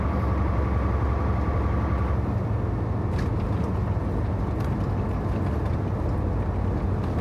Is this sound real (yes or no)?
yes